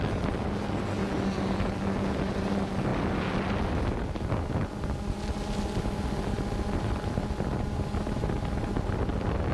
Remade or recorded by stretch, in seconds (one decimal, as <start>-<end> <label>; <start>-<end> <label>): 0.0-9.5 recorded